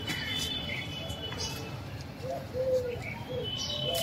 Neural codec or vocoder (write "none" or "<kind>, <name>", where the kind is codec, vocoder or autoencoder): vocoder, BigVGAN v2